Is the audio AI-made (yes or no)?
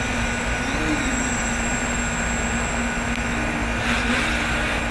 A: no